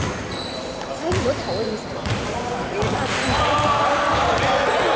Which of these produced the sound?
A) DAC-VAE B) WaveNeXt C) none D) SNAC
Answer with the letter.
C